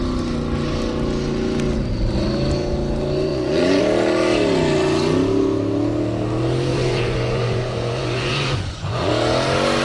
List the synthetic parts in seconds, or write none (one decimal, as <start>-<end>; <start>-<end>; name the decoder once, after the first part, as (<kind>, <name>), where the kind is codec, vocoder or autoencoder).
3.3-3.8 (vocoder, Vocos); 6.7-9.1